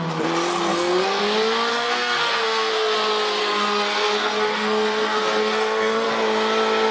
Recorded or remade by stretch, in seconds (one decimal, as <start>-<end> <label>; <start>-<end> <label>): 0.0-0.7 recorded; 0.7-1.2 remade; 1.2-1.7 recorded; 1.7-2.7 remade; 2.7-3.4 recorded; 3.4-6.1 remade; 6.1-6.9 recorded